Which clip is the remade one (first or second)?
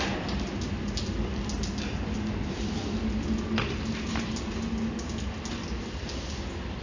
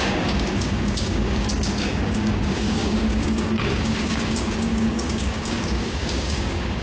second